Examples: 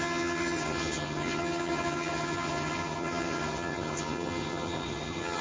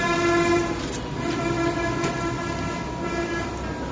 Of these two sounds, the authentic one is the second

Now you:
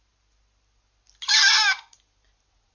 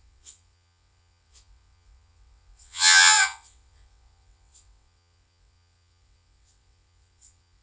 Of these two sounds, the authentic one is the first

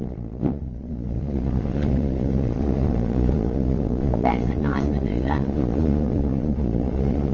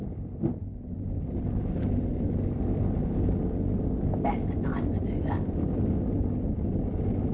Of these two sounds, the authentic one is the second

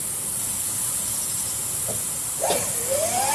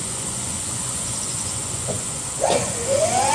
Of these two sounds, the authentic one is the first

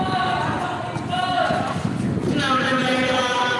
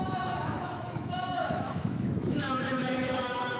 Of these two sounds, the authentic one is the first